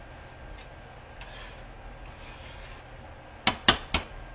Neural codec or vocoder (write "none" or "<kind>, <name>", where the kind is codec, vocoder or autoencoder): none